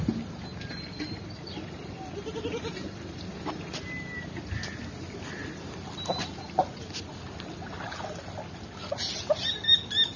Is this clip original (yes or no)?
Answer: yes